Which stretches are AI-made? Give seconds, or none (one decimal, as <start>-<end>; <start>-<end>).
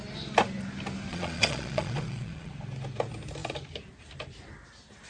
1.1-2.5